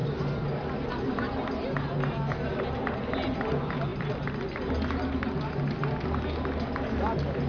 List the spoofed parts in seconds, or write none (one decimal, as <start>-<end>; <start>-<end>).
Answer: none